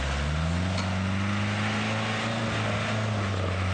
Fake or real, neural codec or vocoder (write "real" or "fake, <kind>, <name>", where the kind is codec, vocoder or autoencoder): real